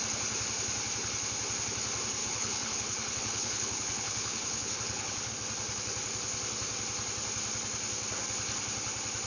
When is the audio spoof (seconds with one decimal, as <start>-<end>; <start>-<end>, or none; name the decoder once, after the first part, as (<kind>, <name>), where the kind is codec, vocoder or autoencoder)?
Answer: 2.2-5.3 (codec, HILCodec)

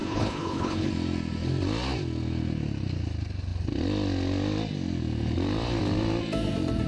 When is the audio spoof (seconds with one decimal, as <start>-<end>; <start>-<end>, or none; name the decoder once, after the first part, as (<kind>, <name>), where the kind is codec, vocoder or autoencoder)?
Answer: 0.0-0.9 (codec, HILCodec)

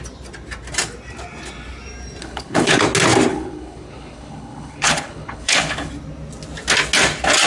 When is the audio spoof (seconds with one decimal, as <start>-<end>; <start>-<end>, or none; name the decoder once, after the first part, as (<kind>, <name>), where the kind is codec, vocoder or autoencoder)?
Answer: 2.2-2.8 (codec, HILCodec); 3.3-5.9

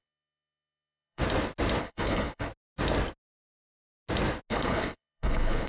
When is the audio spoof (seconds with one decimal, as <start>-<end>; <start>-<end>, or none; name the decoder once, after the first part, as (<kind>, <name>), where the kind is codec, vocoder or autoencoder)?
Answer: 0.0-1.2 (codec, HILCodec); 1.8-2.5; 4.5-5.7

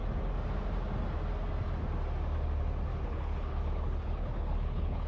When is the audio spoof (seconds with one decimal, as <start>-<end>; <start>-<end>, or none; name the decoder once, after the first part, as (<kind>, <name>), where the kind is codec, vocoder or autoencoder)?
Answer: 2.9-5.1 (codec, HILCodec)

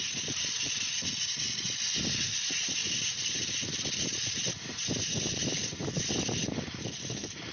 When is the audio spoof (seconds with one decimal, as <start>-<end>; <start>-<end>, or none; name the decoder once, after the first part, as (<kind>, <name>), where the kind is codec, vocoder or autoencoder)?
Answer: none

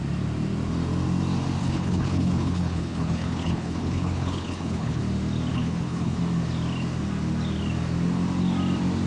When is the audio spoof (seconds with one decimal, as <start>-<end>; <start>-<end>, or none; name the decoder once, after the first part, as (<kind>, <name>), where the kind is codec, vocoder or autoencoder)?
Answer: 1.6-5.0 (codec, HILCodec); 5.5-6.2

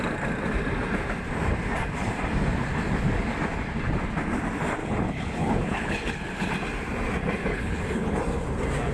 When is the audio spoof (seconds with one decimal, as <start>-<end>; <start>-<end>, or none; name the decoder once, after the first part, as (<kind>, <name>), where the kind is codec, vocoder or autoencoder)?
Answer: 4.8-6.5 (codec, HILCodec); 7.5-8.2